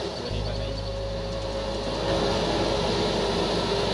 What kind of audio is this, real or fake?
real